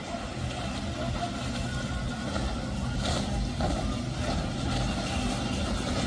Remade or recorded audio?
recorded